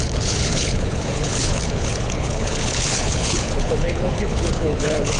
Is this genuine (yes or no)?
no